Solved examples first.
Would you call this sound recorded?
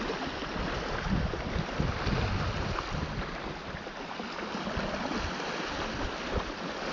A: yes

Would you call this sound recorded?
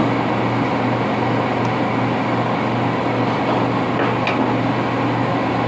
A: yes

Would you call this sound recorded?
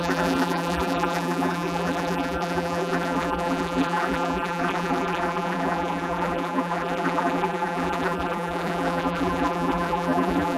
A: no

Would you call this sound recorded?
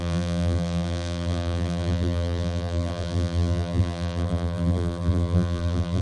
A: no